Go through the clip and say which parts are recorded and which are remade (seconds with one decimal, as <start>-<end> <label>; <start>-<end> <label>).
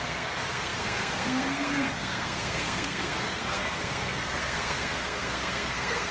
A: 0.0-6.1 remade